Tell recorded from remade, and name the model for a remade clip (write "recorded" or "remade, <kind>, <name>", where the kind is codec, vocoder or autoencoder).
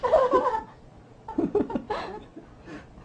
recorded